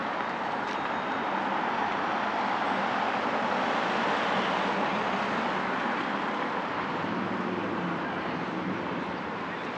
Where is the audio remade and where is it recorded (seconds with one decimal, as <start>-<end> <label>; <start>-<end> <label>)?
0.0-9.8 recorded